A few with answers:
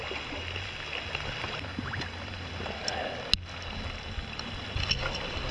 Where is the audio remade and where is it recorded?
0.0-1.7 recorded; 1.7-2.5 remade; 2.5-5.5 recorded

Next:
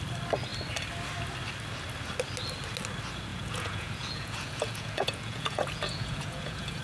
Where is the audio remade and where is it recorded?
0.0-3.3 recorded; 3.3-6.8 remade

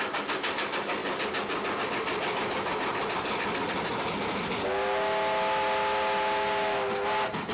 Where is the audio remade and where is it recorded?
0.0-7.5 recorded

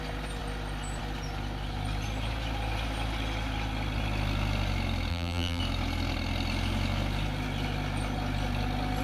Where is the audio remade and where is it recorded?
0.0-5.1 recorded; 5.1-5.6 remade; 5.6-9.0 recorded